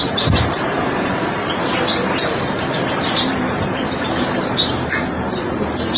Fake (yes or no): yes